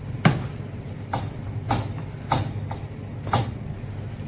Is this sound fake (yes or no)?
no